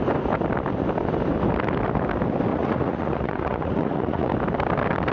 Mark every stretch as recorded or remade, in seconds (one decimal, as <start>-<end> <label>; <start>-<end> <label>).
0.0-2.5 recorded; 2.5-4.3 remade; 4.3-5.1 recorded